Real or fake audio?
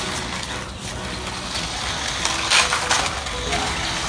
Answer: real